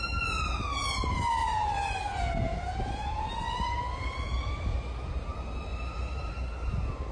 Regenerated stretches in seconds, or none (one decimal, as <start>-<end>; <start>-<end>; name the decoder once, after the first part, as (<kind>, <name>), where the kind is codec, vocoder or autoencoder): 1.4-2.2 (vocoder, BigVGAN v2); 5.7-6.3